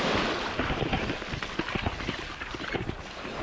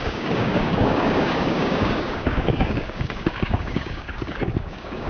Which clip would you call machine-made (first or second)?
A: second